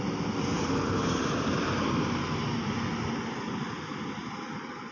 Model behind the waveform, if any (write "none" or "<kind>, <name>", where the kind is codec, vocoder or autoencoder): none